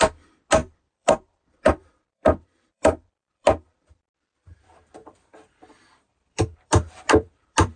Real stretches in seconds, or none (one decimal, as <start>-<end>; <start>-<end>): 0.0-0.6; 4.1-5.0